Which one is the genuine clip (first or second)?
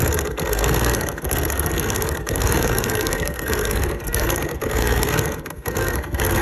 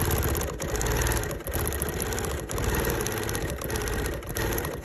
second